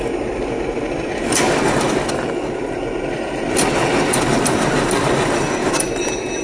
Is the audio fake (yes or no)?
no